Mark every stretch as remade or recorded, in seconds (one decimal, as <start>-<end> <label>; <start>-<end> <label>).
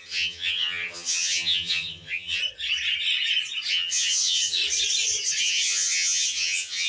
0.0-2.4 remade; 2.4-3.7 recorded; 3.7-4.6 remade; 4.6-5.4 recorded; 5.4-6.9 remade